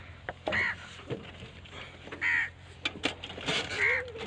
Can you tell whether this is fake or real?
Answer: real